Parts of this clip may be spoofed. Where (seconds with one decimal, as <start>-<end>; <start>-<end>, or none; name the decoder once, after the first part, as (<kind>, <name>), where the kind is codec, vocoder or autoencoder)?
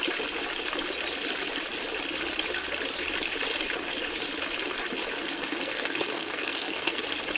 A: 5.2-7.0 (codec, SNAC)